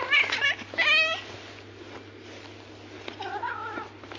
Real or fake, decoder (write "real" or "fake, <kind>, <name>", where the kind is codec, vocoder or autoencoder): real